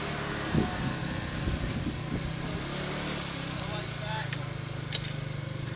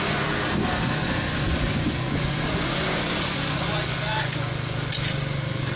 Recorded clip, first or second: first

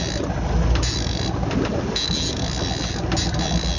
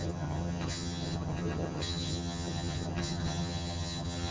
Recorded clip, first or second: first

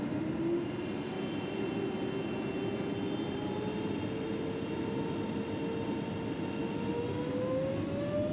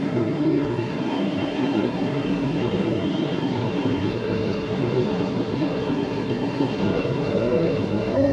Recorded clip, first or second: first